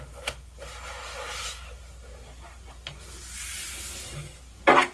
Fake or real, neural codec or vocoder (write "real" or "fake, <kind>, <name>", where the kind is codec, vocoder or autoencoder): real